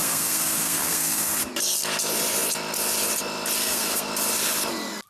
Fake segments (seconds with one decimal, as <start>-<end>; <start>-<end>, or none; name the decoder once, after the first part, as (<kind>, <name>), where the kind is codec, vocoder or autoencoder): 0.0-1.4 (codec, SNAC); 3.6-4.1